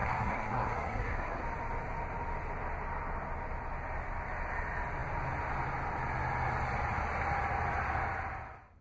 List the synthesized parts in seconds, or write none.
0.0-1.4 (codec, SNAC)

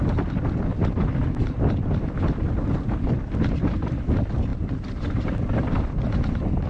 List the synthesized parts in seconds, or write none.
4.5-5.9 (vocoder, BigVGAN v2)

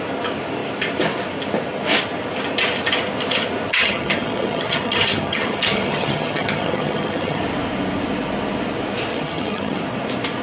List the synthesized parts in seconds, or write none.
3.7-7.4 (vocoder, HiFi-GAN); 9.1-9.8

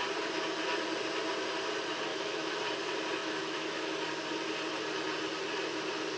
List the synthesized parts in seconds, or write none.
2.1-2.6 (autoencoder, DAC-VAE); 3.2-3.9

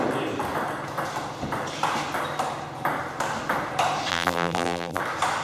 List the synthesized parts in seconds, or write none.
4.1-5.0 (vocoder, BigVGAN v2)